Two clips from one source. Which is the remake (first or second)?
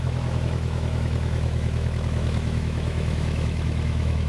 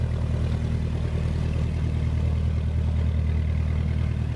first